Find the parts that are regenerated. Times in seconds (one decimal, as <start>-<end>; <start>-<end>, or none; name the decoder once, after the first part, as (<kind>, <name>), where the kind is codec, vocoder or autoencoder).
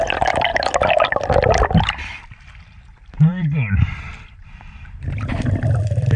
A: 0.0-0.5 (vocoder, BigVGAN v2); 2.6-6.2